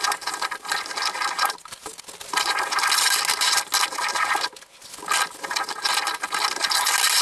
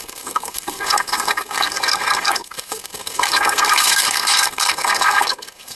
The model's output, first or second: second